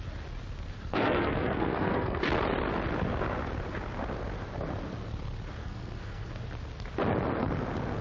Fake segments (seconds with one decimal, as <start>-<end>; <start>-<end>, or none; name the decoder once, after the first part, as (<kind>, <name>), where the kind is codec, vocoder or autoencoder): 0.9-2.2 (codec, SNAC); 5.6-6.3